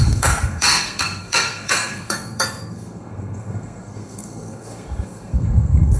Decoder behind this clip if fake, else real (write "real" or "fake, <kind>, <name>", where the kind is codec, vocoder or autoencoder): fake, codec, SNAC